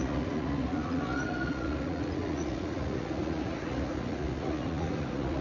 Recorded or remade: remade